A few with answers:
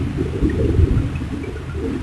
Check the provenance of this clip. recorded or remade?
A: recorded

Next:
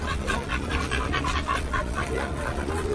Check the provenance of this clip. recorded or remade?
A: remade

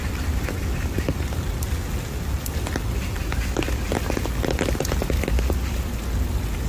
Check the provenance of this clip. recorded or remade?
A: recorded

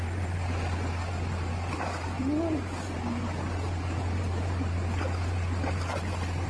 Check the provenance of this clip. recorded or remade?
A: recorded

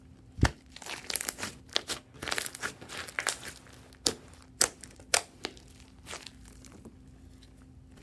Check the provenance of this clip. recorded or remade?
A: recorded